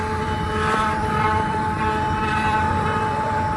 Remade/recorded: remade